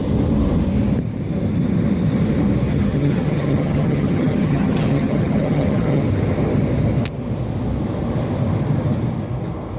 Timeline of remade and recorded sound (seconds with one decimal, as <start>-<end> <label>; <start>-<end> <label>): 0.0-2.7 recorded; 2.7-6.0 remade; 6.0-9.8 recorded